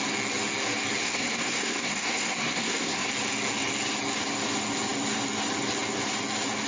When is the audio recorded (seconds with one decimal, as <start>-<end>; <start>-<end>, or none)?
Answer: 0.0-1.0; 3.1-6.7